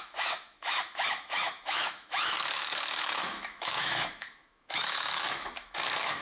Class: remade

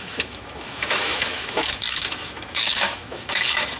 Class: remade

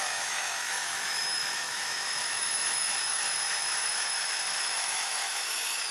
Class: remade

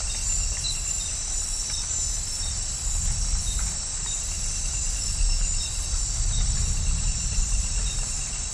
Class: recorded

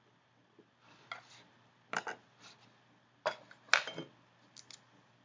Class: recorded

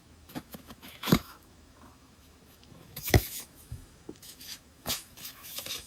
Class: remade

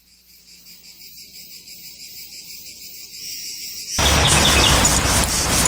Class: recorded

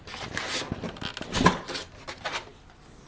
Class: recorded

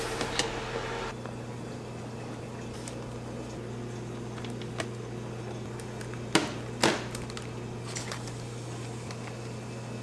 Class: recorded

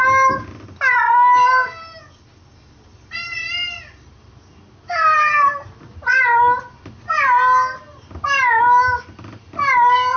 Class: recorded